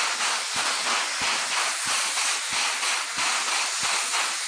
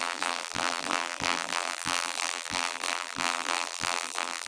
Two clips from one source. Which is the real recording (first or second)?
first